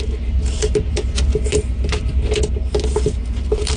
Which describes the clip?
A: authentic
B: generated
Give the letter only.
A